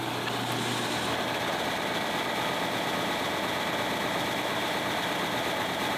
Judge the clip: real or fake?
real